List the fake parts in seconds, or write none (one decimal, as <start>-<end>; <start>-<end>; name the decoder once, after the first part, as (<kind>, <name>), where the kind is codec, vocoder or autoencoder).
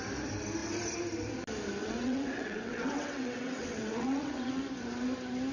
1.8-4.6 (vocoder, WaveNeXt)